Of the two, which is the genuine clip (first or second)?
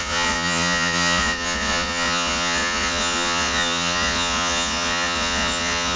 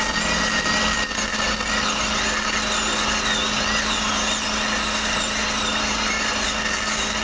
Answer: second